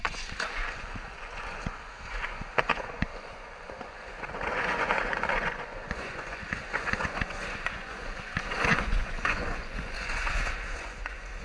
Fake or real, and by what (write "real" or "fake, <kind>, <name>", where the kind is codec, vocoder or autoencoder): fake, vocoder, Vocos